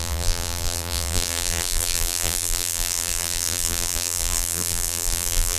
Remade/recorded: remade